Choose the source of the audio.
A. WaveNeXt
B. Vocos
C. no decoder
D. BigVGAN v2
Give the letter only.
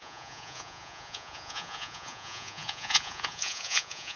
B